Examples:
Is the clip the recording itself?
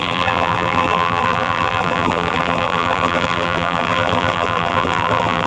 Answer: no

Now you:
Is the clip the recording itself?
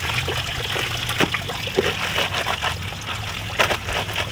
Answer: yes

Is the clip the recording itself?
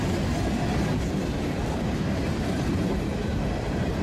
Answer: no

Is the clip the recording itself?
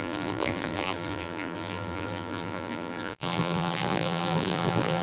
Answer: no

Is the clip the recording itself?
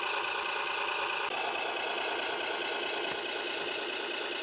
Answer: yes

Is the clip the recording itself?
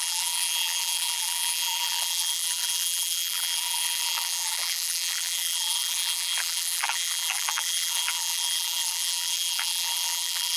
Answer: no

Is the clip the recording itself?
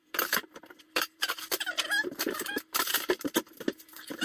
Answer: no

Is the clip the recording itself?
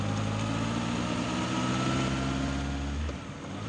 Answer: yes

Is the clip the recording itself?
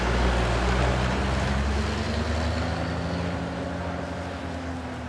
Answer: yes